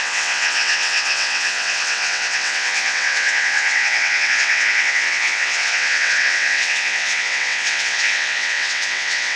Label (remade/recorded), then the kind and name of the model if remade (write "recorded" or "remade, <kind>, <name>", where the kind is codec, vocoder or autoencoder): remade, vocoder, WaveNeXt